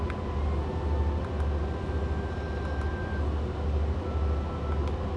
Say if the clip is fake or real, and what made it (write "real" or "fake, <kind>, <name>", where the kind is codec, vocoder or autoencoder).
real